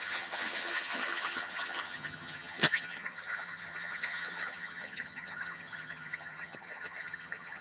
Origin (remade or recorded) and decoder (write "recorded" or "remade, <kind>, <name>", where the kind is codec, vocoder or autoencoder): remade, vocoder, HiFi-GAN